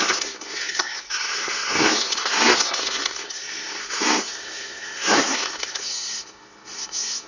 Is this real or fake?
fake